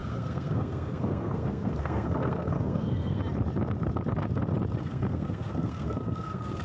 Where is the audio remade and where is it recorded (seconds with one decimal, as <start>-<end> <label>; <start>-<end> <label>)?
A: 0.0-3.2 remade; 3.2-4.8 recorded; 4.8-6.6 remade